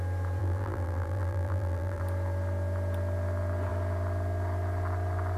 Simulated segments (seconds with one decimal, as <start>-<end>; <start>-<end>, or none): 0.4-2.0